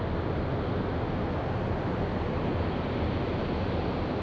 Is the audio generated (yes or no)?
no